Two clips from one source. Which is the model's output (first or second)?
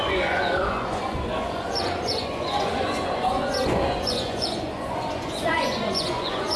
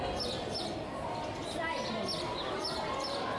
first